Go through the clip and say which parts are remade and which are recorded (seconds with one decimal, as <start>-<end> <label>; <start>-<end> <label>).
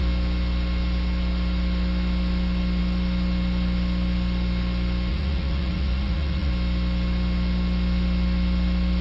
0.0-5.1 recorded; 5.1-6.5 remade; 6.5-9.0 recorded